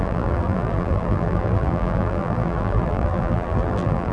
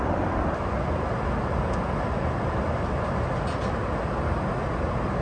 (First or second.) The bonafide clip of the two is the second